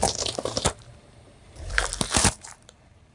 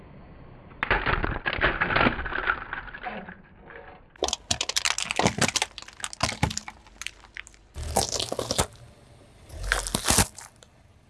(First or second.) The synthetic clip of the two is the first